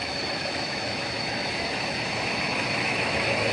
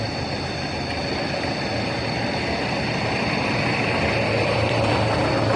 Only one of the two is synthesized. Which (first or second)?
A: first